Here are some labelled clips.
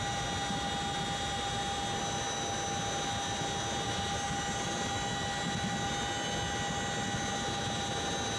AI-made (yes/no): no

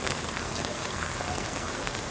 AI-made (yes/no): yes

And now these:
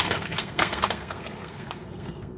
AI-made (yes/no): yes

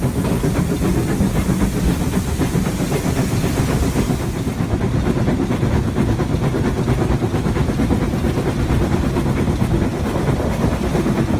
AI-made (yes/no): no